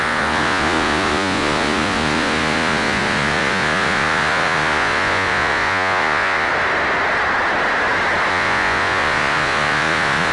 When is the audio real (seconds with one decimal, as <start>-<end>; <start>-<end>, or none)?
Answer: 6.5-8.3